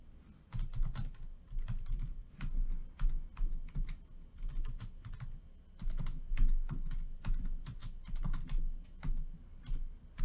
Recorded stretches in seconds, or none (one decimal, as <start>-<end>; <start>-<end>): 0.0-10.2